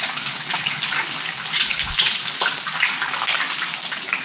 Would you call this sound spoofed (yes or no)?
yes